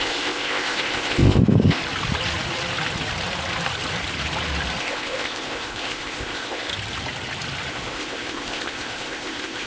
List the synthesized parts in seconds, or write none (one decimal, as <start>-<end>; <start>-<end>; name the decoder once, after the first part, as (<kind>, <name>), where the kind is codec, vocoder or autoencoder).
0.0-1.8 (codec, ZipCodec); 4.8-6.7; 7.7-9.7